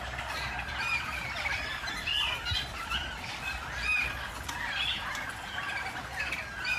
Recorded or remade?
remade